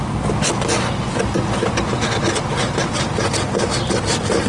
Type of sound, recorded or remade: recorded